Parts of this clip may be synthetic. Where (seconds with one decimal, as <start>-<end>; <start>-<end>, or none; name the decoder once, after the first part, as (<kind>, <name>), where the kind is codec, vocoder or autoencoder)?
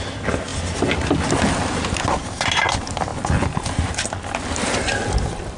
none